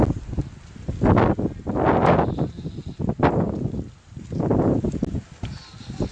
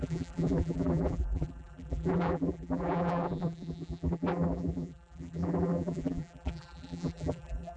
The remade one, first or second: second